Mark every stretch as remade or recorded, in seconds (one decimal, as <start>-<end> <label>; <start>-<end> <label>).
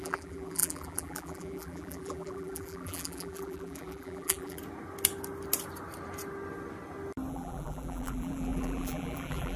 0.0-4.6 remade; 4.6-7.3 recorded; 7.3-9.6 remade